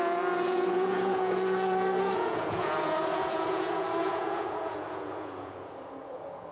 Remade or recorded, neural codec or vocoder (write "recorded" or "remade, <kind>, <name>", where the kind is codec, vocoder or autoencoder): remade, vocoder, Vocos